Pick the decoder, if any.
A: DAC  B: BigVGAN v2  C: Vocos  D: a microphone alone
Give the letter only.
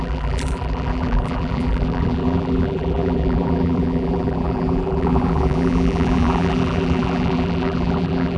B